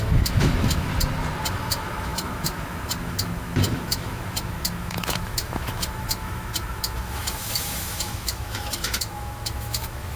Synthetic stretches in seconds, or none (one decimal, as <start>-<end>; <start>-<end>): 0.0-0.9; 1.5-10.2